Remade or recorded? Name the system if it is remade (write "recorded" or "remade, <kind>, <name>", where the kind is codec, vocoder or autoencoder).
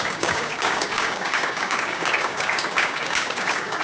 remade, codec, DAC